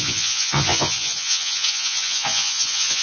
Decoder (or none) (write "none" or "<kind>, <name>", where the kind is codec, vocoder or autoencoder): vocoder, Vocos